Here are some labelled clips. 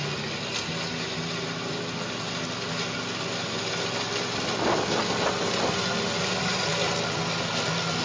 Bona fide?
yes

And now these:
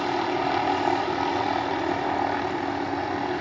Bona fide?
yes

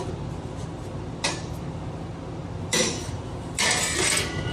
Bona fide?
no